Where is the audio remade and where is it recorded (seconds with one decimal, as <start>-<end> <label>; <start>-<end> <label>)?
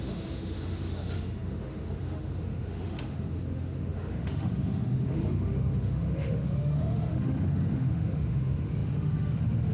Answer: 0.0-9.7 remade